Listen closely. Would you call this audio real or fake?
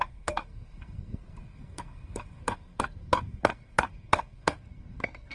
fake